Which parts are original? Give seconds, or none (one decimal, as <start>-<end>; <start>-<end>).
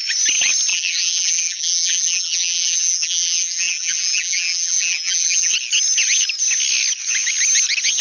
0.0-0.7; 5.5-8.0